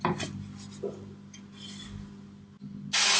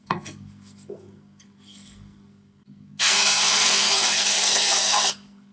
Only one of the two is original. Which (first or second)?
first